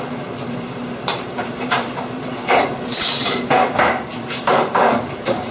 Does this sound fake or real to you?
fake